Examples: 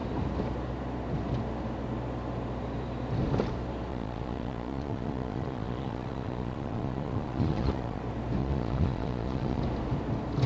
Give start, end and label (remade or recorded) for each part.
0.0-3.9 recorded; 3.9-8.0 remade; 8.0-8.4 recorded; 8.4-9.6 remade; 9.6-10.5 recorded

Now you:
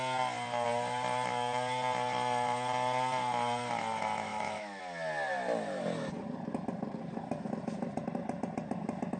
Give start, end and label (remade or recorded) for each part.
0.0-4.3 recorded; 4.3-4.8 remade; 4.8-9.2 recorded